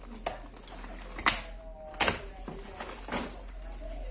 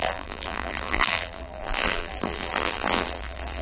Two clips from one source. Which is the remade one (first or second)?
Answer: second